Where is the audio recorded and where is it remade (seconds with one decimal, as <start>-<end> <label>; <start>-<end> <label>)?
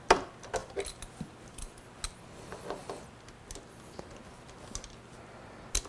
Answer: 0.0-5.9 recorded